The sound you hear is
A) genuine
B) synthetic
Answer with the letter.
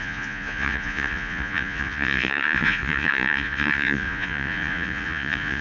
B